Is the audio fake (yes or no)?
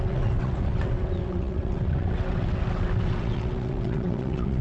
yes